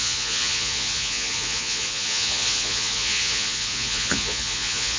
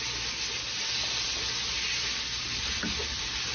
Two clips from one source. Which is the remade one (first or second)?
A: first